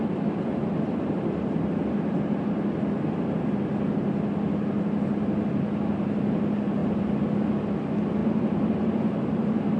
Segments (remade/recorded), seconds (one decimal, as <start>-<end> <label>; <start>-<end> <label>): 0.0-9.8 recorded